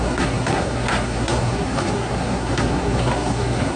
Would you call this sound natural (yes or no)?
no